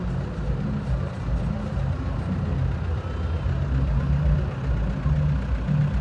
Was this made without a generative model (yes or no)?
yes